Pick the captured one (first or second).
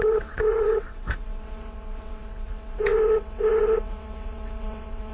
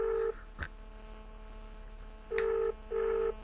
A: second